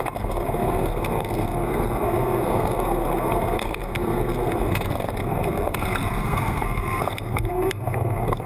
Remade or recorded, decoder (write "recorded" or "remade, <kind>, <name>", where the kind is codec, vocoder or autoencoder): remade, codec, SNAC